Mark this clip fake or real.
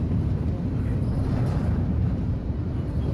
real